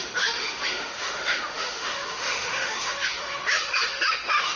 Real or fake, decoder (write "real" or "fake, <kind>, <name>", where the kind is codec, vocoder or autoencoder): fake, autoencoder, DAC-VAE